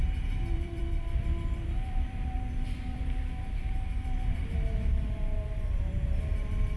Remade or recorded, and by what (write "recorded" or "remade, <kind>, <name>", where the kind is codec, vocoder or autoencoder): remade, vocoder, BigVGAN v2